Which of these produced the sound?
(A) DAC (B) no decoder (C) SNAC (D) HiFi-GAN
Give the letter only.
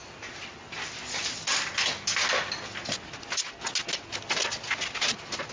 B